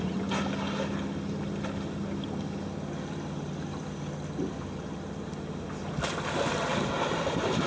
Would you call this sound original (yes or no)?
yes